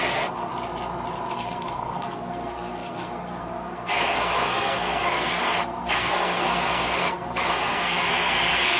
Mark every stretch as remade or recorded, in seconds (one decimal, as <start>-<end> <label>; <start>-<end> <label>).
0.0-0.5 remade; 0.5-1.3 recorded; 1.3-8.8 remade